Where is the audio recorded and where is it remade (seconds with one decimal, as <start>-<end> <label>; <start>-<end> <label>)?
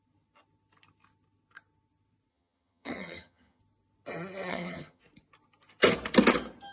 0.0-2.3 recorded; 2.3-3.6 remade; 3.6-4.5 recorded; 4.5-5.0 remade; 5.0-6.7 recorded